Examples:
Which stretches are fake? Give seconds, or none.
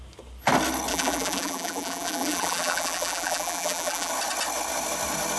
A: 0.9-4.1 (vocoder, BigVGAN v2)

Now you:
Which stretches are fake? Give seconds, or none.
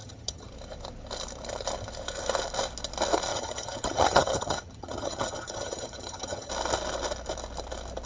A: 0.0-0.5 (vocoder, HiFi-GAN); 3.3-6.5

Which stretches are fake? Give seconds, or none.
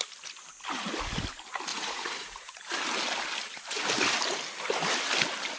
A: 1.7-2.6 (vocoder, Vocos)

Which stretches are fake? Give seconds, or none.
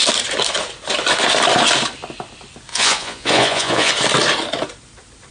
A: 2.7-3.9 (vocoder, Vocos)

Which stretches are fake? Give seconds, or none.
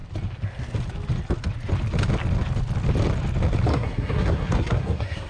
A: 3.7-5.3 (codec, SNAC)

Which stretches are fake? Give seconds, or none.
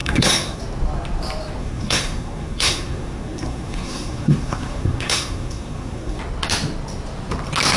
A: 0.0-0.6 (codec, SNAC); 1.6-6.2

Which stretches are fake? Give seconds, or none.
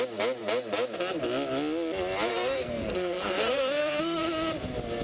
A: 2.3-4.2 (codec, SNAC)